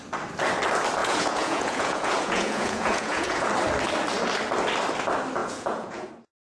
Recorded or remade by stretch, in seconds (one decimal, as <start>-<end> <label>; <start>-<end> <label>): 0.0-1.0 recorded; 1.0-3.5 remade; 3.5-5.4 recorded; 5.4-6.1 remade; 6.1-6.5 recorded